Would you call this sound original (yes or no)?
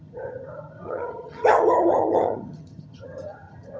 no